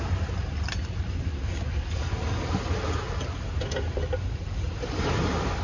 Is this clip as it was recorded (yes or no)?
yes